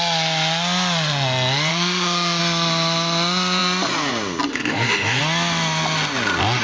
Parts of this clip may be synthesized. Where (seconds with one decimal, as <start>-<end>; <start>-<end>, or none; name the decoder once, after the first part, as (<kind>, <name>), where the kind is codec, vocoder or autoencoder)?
1.7-2.4 (autoencoder, DAC-VAE); 4.5-5.2